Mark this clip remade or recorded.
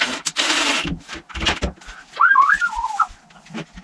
recorded